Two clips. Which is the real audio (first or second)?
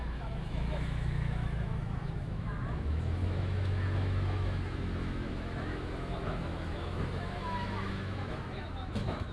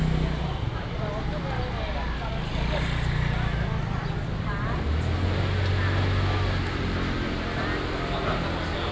second